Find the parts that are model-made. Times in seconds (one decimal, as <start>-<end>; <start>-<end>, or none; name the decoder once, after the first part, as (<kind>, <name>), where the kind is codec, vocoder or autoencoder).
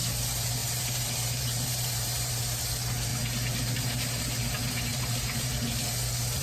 0.6-2.3 (vocoder, BigVGAN v2); 4.9-5.5